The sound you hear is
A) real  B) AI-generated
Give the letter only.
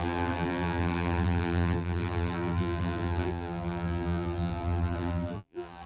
B